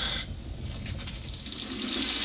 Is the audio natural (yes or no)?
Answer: yes